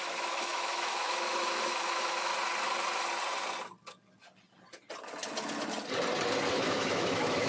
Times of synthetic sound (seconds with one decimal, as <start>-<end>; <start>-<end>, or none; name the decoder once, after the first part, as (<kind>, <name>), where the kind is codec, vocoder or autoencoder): 0.0-2.3 (autoencoder, DAC-VAE); 6.5-7.5